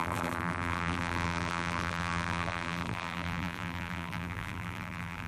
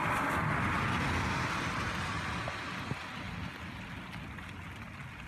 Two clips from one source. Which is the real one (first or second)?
second